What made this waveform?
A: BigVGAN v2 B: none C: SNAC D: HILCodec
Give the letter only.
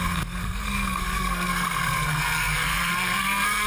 C